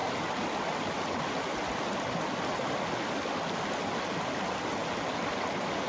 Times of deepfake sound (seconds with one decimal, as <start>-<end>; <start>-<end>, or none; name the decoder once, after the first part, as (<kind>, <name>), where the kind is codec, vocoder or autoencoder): none